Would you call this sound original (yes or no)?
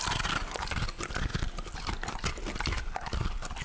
yes